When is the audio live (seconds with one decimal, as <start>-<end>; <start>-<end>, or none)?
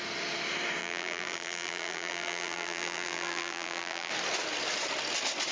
0.0-0.8; 4.1-5.5